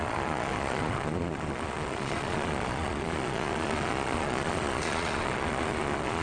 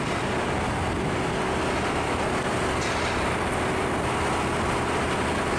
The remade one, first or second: first